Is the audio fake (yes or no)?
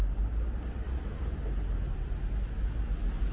no